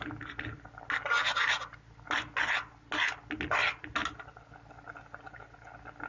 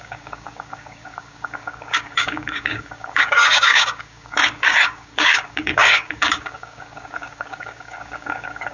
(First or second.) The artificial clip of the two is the second